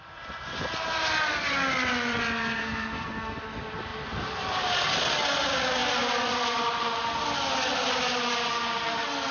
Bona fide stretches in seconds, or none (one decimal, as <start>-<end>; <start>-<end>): 0.0-2.6; 3.4-9.3